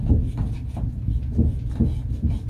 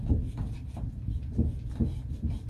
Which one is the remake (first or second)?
second